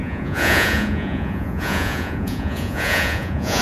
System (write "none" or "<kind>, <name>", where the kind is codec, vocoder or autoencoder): vocoder, Vocos